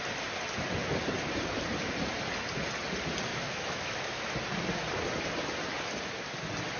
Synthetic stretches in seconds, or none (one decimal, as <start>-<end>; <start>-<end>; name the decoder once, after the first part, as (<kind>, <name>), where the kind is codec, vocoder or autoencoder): 3.3-4.3 (autoencoder, DAC-VAE)